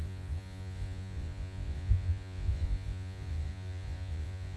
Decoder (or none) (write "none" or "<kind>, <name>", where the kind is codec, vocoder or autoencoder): vocoder, Vocos